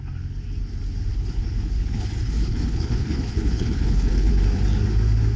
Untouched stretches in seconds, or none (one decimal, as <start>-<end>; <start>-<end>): 0.0-1.1; 4.3-5.4